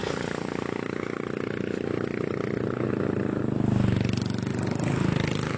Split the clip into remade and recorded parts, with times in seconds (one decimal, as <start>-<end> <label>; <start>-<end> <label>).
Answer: 0.0-5.6 recorded